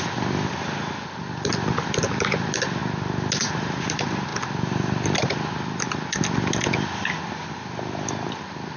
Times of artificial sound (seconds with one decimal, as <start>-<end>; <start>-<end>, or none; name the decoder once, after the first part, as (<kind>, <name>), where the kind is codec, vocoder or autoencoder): none